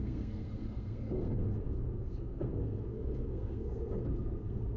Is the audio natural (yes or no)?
no